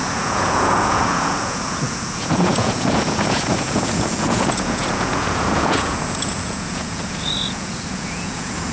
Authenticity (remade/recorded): remade